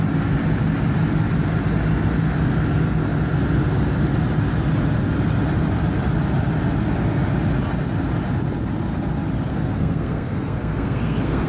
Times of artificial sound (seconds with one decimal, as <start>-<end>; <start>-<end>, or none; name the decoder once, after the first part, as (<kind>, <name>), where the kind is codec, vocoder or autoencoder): 9.5-11.5 (codec, SNAC)